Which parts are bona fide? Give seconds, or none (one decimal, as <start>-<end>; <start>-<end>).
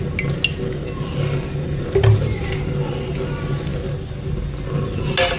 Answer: 0.0-5.4